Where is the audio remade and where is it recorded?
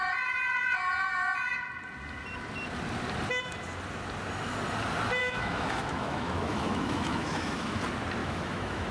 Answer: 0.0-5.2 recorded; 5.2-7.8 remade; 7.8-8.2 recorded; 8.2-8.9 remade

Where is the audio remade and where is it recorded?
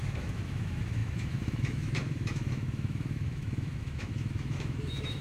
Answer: 0.0-5.2 remade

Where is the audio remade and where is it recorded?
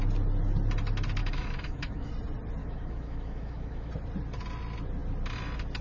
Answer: 0.0-1.2 recorded; 1.2-2.1 remade; 2.1-2.6 recorded; 2.6-3.9 remade; 3.9-5.8 recorded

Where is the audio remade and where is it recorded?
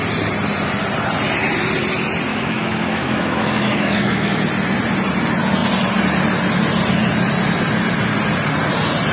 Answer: 0.0-2.3 recorded; 2.3-4.4 remade; 4.4-9.1 recorded